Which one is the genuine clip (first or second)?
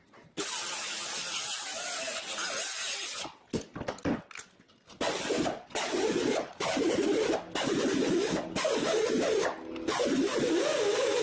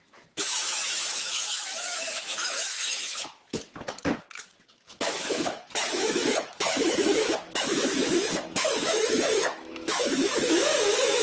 first